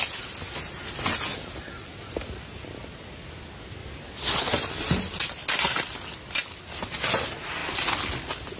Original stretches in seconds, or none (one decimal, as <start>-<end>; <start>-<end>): 0.0-8.6